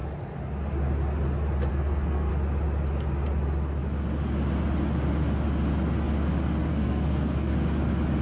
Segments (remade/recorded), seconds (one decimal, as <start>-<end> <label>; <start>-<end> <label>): 0.0-1.7 recorded; 1.7-2.3 remade; 2.3-6.7 recorded; 6.7-7.5 remade; 7.5-8.2 recorded